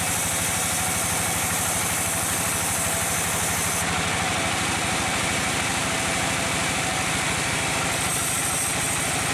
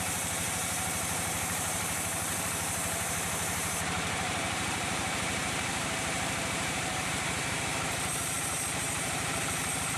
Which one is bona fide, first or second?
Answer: first